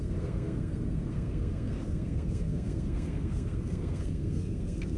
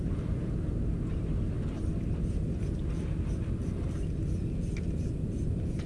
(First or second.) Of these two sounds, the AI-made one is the first